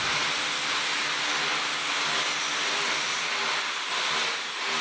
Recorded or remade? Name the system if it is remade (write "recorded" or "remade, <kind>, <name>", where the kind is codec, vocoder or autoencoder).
recorded